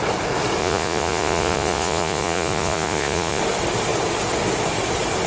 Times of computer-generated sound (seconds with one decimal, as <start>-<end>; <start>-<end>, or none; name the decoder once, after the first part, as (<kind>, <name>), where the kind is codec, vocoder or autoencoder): 0.6-3.4 (vocoder, Vocos)